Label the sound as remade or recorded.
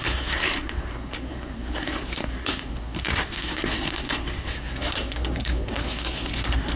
remade